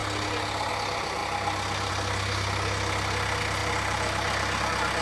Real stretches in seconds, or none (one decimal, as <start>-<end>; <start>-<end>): 0.0-3.6; 4.6-5.0